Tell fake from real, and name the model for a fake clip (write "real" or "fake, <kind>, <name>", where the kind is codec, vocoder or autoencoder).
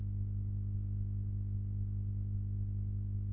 fake, vocoder, Vocos